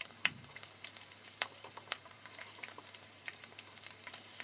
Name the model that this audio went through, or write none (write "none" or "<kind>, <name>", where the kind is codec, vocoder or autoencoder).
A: vocoder, BigVGAN v2